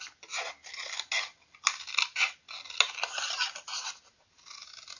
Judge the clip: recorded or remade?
recorded